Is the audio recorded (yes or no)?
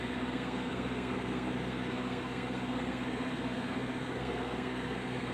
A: no